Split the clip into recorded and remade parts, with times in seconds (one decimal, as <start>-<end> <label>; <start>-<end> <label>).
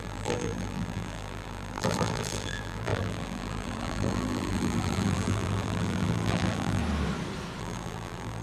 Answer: 0.0-6.8 remade; 6.8-7.6 recorded; 7.6-8.4 remade